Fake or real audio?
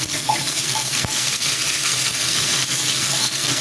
fake